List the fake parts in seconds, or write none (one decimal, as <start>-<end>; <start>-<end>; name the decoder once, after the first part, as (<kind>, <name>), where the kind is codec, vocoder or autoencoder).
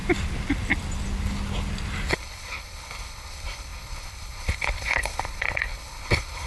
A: 2.1-6.5 (codec, HILCodec)